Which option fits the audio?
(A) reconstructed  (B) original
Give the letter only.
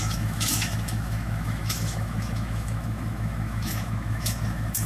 A